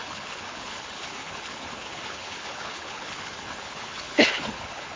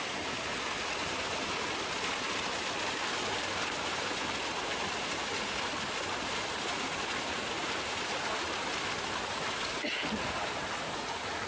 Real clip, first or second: second